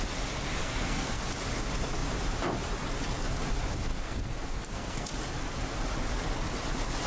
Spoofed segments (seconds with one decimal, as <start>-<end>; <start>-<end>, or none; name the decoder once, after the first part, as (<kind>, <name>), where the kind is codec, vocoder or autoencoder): 0.6-1.2 (codec, SNAC); 3.9-5.1